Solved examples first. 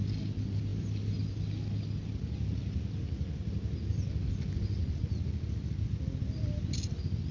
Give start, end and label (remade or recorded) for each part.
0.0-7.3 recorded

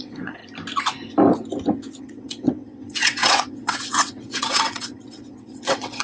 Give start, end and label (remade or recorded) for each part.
0.0-0.4 remade; 0.4-2.0 recorded; 2.0-6.0 remade

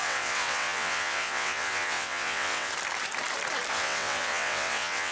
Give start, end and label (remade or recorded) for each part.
0.0-2.7 remade; 2.7-3.7 recorded; 3.7-5.1 remade

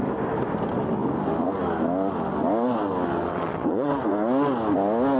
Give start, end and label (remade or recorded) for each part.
0.0-3.2 recorded; 3.2-4.0 remade; 4.0-5.2 recorded

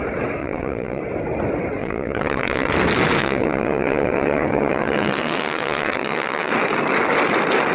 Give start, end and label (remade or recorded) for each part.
0.0-0.4 recorded; 0.4-1.0 remade; 1.0-1.8 recorded; 1.8-2.7 remade; 2.7-3.2 recorded; 3.2-6.5 remade; 6.5-7.7 recorded